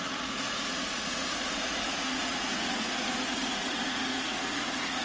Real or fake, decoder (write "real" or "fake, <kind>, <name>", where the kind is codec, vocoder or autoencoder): fake, vocoder, Vocos